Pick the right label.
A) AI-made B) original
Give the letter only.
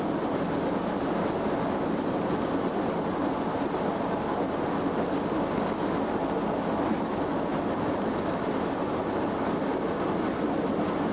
B